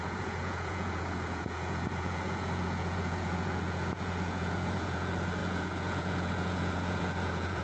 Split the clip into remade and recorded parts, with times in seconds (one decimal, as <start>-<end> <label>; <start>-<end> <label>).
0.0-7.6 remade